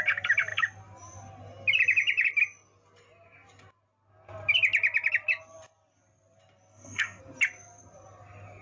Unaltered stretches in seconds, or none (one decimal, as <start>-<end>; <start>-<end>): 0.0-6.7; 7.2-8.6